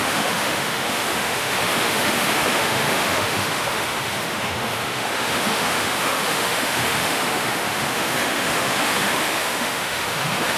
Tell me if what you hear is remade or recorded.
remade